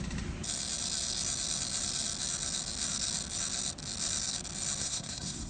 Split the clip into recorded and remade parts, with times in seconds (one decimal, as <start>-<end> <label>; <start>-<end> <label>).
0.0-4.8 recorded; 4.8-5.5 remade